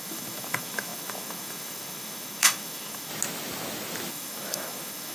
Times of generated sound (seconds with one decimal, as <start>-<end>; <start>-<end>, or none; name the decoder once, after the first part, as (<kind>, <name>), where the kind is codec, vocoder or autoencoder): 0.0-3.1 (autoencoder, DAC-VAE); 4.1-5.1